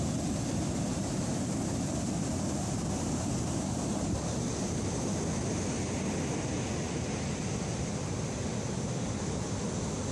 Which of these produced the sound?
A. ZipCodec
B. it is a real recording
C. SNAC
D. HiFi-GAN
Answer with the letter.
B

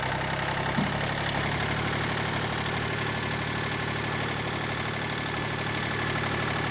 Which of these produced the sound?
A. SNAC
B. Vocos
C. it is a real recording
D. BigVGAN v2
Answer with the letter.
C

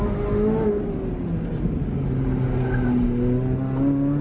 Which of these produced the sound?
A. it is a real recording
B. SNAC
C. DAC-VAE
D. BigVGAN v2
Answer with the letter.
A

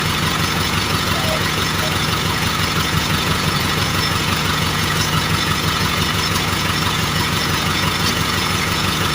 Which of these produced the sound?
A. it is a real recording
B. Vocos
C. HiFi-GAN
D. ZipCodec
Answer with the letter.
B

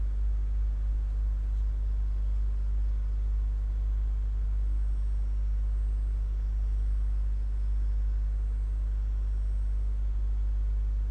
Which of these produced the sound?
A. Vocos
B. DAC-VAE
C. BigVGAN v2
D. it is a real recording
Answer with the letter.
D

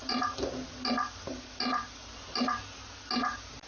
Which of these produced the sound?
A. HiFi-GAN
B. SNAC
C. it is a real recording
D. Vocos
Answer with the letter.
C